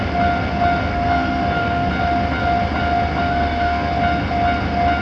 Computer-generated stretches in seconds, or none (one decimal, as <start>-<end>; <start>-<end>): 0.9-1.9; 3.2-3.9